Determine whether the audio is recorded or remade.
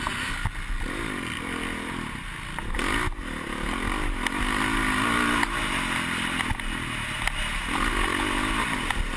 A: recorded